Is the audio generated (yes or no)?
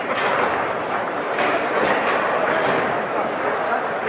no